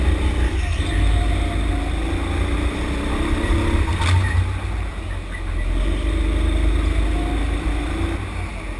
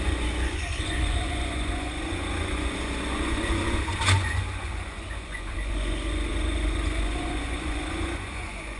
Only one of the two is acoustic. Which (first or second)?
first